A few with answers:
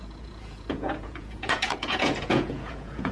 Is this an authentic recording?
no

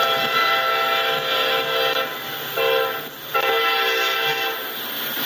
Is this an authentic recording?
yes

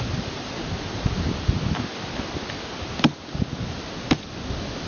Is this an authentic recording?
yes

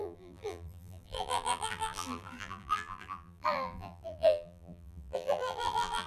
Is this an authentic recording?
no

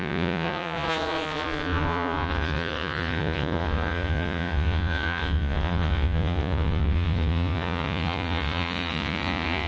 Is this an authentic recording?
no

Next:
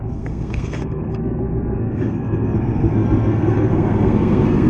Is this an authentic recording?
no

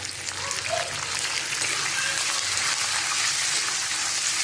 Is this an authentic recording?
yes